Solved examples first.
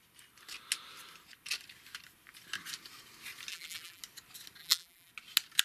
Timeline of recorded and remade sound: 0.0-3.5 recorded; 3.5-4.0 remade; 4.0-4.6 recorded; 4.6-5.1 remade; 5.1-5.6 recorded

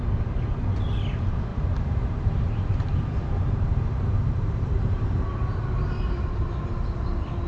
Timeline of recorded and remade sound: 0.0-1.5 recorded; 1.5-5.2 remade; 5.2-7.5 recorded